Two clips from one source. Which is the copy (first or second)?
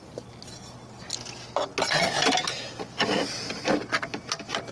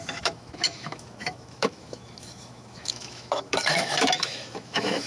second